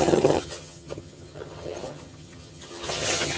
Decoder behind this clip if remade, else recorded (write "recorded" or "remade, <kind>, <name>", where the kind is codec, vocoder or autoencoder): remade, vocoder, HiFi-GAN